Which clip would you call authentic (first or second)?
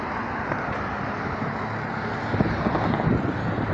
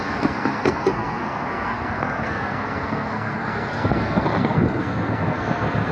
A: first